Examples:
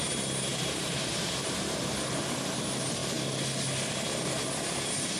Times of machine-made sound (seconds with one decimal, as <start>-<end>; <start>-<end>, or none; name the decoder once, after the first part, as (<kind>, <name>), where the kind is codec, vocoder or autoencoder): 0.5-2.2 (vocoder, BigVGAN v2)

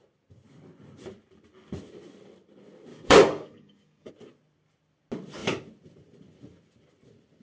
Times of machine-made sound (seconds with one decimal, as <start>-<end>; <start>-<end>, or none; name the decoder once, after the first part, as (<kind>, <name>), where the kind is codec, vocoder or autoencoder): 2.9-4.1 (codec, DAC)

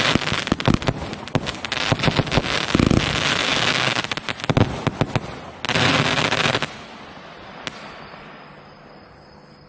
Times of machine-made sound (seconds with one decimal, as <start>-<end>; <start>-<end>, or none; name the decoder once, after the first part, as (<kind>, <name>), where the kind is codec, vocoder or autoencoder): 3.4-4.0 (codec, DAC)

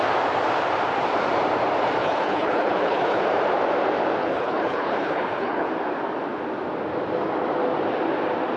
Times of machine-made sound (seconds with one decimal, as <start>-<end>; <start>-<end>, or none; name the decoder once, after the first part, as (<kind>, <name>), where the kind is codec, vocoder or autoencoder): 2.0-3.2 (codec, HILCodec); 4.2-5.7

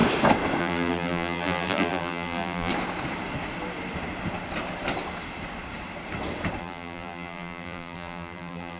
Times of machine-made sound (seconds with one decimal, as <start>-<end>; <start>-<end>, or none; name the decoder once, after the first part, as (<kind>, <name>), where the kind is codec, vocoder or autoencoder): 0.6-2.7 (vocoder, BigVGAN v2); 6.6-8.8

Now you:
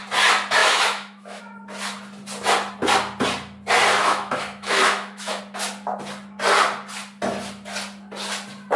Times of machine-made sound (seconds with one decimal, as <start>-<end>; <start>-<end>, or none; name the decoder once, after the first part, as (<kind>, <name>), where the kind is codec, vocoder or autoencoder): 0.6-1.4 (autoencoder, DAC-VAE); 4.0-5.4

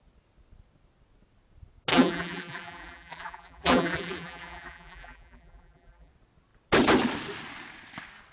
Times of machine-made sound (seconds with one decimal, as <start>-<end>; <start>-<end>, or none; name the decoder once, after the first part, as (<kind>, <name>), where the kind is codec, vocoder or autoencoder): 1.9-6.1 (vocoder, BigVGAN v2)

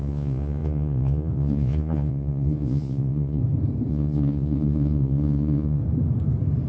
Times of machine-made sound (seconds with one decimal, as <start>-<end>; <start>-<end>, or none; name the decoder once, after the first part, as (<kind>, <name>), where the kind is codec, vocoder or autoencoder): 0.0-3.4 (vocoder, Vocos); 3.9-5.8